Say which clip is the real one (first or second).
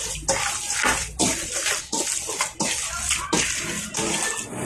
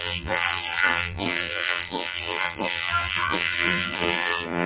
first